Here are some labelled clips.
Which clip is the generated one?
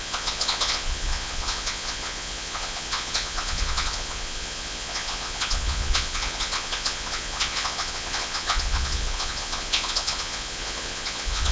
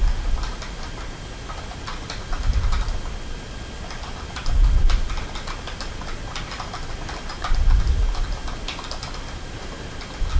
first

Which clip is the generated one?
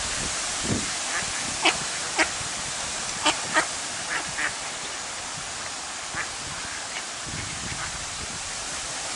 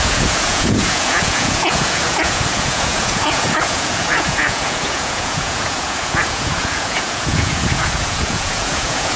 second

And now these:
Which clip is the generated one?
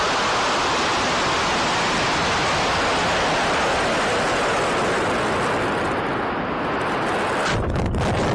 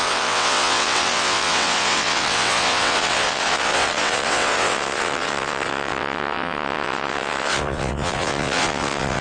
second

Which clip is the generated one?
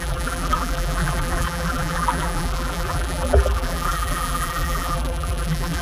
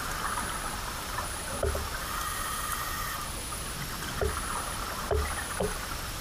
first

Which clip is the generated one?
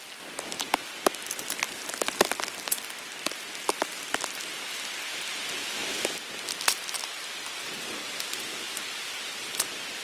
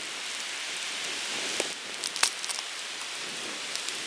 second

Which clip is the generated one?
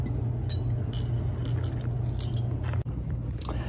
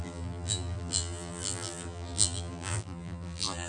second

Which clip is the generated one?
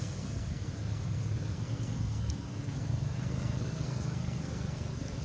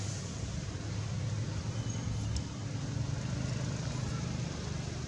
first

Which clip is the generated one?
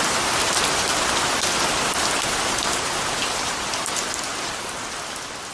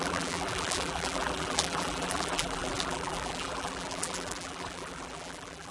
second